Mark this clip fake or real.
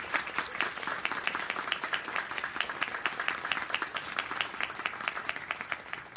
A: real